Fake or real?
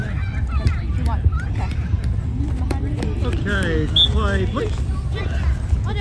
real